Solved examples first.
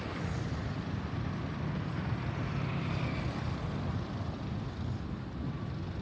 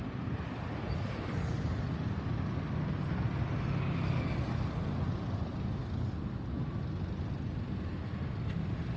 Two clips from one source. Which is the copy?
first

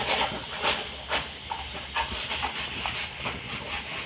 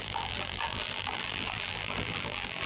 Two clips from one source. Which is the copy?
second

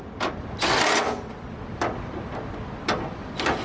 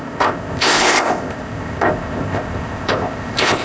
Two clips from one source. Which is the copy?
second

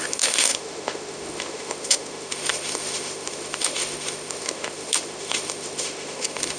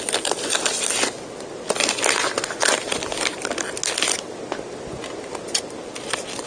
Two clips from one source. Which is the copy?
first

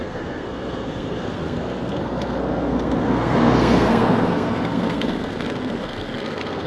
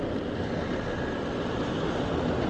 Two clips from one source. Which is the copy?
first